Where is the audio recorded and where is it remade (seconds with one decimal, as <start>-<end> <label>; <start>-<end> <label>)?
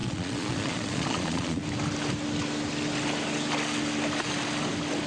0.0-1.6 remade; 1.6-5.1 recorded